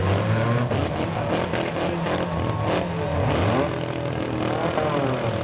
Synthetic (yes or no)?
no